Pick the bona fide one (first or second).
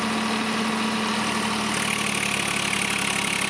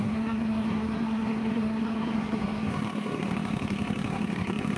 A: first